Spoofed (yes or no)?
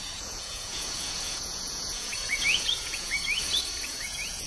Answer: yes